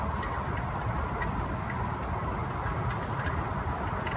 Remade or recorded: recorded